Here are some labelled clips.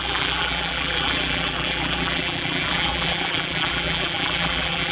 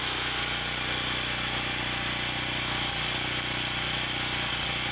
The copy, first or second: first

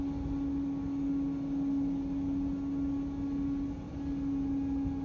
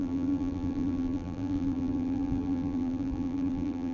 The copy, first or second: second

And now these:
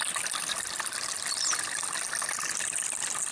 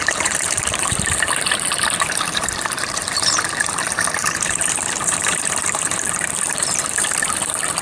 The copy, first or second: second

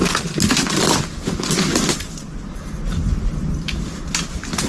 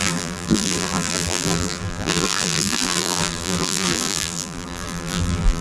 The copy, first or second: second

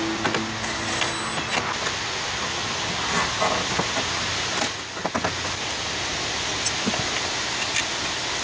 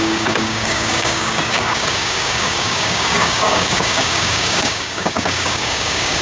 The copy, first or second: second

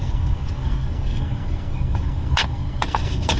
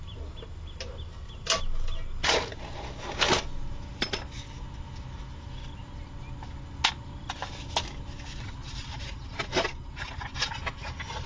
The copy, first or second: first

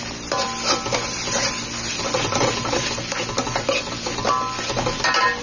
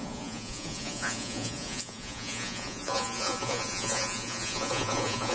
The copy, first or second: second